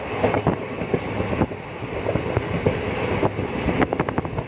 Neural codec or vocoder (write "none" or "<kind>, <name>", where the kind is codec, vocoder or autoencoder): none